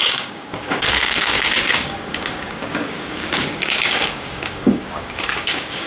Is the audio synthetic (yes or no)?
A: yes